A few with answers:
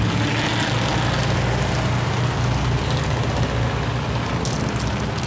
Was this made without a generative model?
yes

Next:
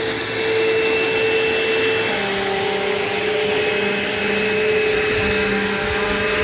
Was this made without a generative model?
yes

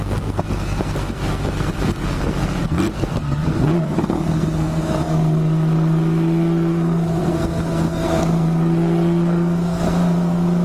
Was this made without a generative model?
no